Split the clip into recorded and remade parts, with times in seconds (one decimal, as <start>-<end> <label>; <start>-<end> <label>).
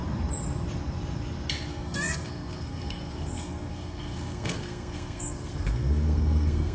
0.0-1.7 recorded; 1.7-6.7 remade